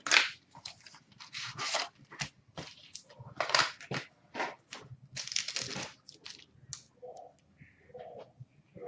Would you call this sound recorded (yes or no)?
yes